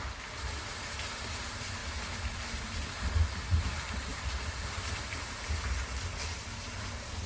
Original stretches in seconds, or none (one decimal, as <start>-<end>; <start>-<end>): 0.0-7.3

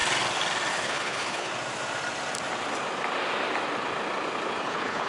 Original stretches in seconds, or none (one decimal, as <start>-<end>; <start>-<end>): 0.0-0.7; 1.5-4.6

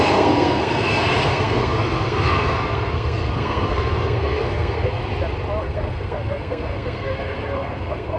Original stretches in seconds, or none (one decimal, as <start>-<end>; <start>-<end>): 5.0-5.6

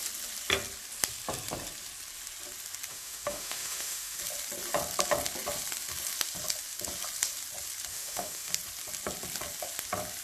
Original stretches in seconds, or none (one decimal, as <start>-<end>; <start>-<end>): 0.0-2.9; 4.2-7.9; 8.5-10.2

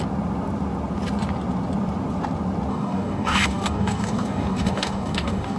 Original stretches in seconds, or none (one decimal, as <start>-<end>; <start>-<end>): 0.0-2.7

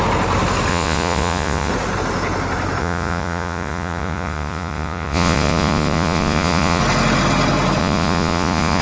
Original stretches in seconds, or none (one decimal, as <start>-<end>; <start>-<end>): 0.0-0.7; 1.7-2.8; 6.8-7.8